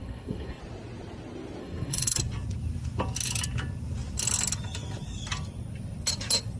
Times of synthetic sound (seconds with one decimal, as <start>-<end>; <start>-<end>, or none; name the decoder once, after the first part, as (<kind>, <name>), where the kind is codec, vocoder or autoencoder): 0.0-0.6 (codec, SNAC); 1.6-2.2